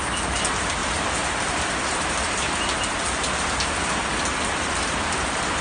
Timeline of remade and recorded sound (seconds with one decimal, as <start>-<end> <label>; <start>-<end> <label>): 0.0-5.6 recorded